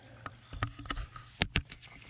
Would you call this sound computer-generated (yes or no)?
no